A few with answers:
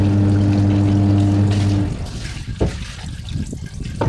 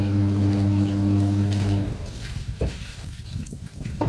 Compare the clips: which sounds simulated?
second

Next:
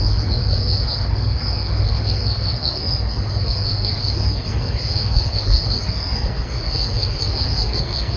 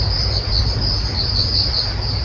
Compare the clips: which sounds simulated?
first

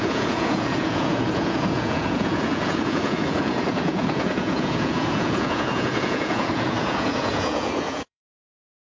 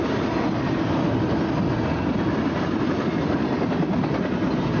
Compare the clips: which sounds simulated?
first